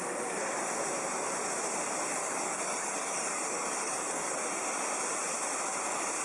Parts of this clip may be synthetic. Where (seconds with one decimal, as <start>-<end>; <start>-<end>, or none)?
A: 2.2-4.3